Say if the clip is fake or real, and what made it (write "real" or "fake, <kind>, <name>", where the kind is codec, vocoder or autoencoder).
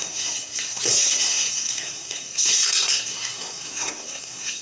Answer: fake, codec, SNAC